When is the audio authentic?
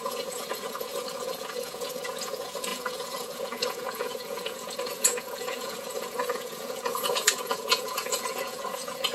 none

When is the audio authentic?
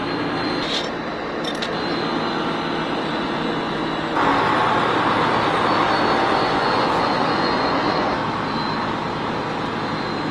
0.0-3.0; 3.8-6.2; 8.2-10.3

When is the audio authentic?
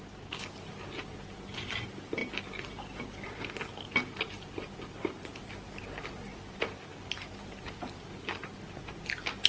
0.0-9.5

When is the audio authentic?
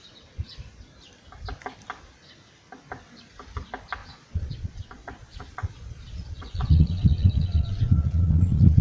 0.0-4.0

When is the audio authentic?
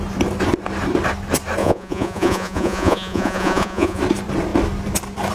0.0-1.6; 4.0-5.3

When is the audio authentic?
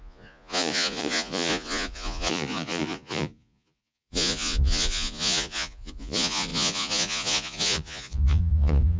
none